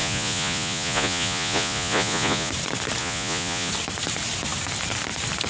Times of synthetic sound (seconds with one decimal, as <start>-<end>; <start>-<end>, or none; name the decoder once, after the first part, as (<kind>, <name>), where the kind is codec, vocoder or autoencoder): 0.0-2.5 (vocoder, Vocos); 3.0-3.7